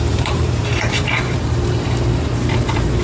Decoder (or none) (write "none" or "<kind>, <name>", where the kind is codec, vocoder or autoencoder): vocoder, BigVGAN v2